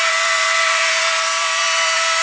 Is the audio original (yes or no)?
no